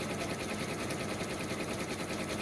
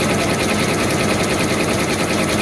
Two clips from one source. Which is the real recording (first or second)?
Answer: second